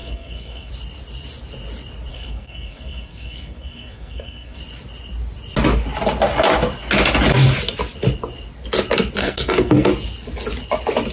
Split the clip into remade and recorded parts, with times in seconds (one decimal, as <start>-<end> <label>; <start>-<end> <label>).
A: 0.0-0.7 remade; 0.7-2.1 recorded; 2.1-4.6 remade; 4.6-9.2 recorded; 9.2-9.9 remade; 9.9-11.1 recorded